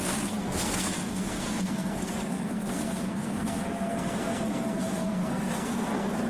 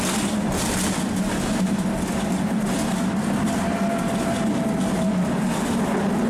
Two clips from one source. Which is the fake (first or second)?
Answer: first